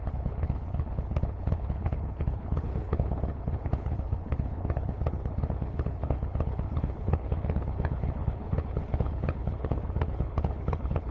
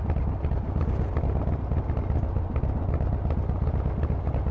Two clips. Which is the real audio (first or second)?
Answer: second